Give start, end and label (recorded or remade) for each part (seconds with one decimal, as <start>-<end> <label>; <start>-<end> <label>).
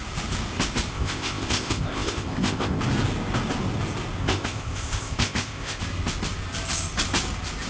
0.0-0.9 recorded; 0.9-2.8 remade; 2.8-4.2 recorded; 4.2-5.8 remade; 5.8-7.7 recorded